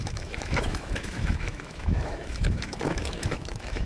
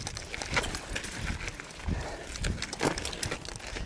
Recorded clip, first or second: second